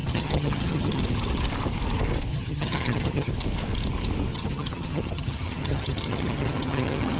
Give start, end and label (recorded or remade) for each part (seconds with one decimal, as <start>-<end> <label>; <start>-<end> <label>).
0.0-1.0 remade; 1.0-2.3 recorded; 2.3-3.3 remade; 3.3-4.3 recorded; 4.3-7.2 remade